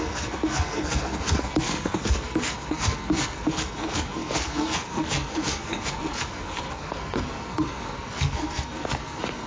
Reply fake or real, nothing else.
fake